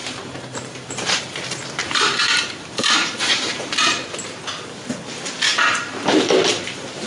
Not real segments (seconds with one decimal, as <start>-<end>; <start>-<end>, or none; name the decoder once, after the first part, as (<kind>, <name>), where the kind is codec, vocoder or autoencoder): 0.0-1.2 (vocoder, BigVGAN v2); 1.8-3.7; 5.5-7.1